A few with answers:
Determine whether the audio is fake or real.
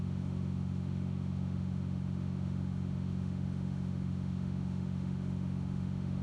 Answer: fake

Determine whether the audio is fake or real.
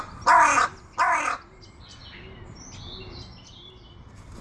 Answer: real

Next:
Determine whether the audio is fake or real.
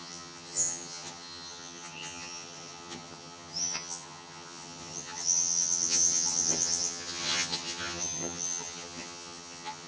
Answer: fake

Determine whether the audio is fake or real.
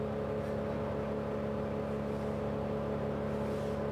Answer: real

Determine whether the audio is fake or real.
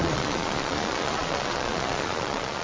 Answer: fake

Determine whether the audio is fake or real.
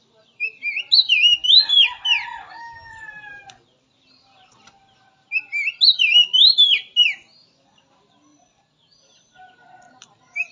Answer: real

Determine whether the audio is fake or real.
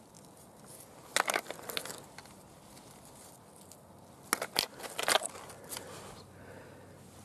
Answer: real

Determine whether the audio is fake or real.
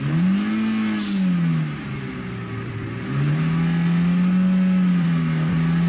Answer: real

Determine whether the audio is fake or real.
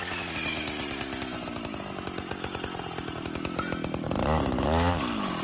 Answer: real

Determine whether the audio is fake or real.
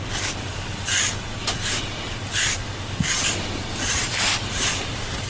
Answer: fake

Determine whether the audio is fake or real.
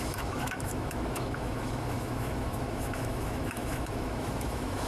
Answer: fake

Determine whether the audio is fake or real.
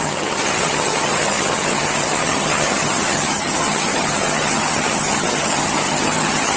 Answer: fake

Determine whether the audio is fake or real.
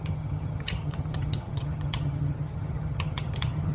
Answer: fake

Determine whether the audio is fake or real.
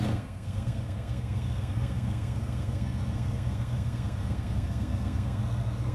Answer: fake